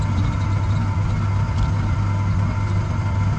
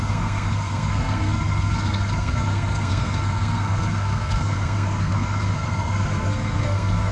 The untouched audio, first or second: first